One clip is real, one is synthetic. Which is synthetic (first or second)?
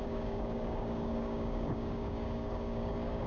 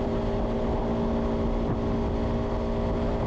first